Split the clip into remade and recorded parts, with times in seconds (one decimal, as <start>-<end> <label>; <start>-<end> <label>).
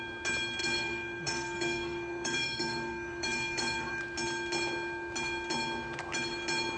0.0-0.6 recorded; 0.6-4.0 remade; 4.0-6.8 recorded